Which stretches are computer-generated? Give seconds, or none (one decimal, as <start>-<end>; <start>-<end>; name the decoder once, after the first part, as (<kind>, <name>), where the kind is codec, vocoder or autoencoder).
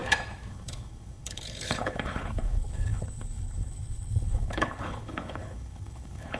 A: 0.5-6.4 (codec, HILCodec)